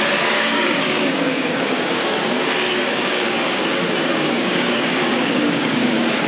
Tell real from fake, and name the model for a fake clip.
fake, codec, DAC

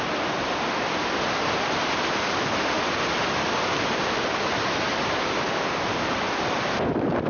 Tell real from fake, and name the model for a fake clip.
real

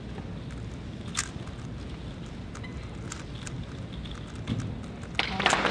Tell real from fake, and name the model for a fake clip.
real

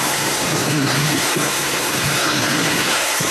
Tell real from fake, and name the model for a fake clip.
fake, codec, SNAC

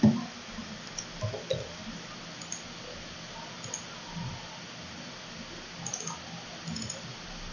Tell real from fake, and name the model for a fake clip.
real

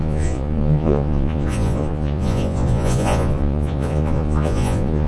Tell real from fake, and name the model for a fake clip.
fake, vocoder, Vocos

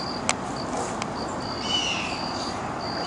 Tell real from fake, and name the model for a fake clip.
real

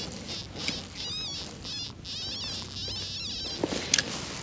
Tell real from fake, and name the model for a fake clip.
real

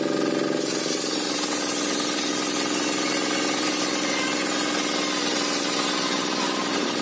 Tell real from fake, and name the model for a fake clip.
real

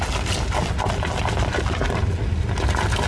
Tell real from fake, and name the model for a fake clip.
real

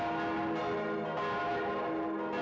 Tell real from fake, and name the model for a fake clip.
real